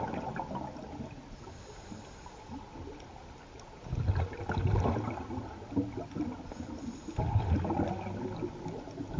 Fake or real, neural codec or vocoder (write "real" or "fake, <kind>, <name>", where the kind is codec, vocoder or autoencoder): real